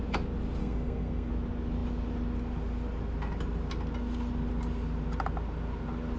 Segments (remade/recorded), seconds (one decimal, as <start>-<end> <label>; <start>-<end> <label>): 0.0-0.6 recorded; 0.6-1.3 remade; 1.3-6.2 recorded